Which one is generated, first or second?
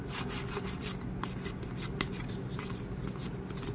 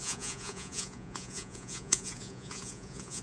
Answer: second